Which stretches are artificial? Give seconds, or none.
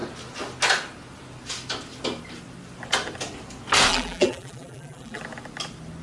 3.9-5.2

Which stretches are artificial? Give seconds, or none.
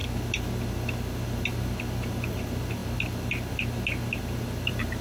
2.1-2.8; 4.2-5.0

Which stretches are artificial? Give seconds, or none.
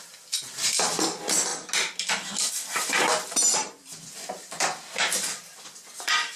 0.0-1.5; 2.5-6.4